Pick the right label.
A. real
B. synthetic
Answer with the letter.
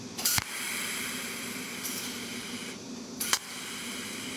A